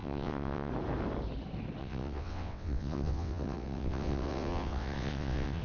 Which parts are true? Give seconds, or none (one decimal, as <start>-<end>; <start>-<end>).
0.7-1.8